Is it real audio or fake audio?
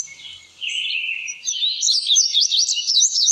fake